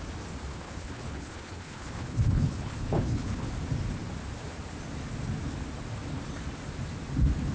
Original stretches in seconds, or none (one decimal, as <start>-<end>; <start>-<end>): 0.0-0.5; 3.5-7.5